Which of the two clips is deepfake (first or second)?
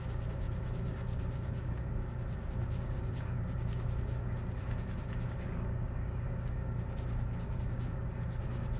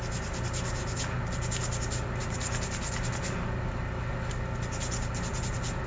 first